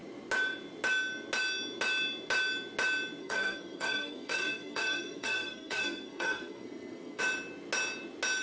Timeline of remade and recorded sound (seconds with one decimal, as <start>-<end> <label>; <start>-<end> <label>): 0.0-3.2 recorded; 3.2-7.2 remade; 7.2-8.4 recorded